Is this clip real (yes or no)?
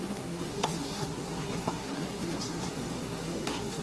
no